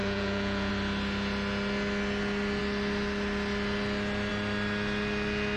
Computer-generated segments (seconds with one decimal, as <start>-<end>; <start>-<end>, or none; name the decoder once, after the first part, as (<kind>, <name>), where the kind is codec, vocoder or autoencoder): 0.0-0.7 (vocoder, Vocos)